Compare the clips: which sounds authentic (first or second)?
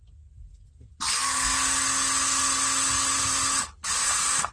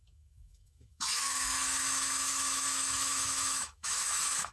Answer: first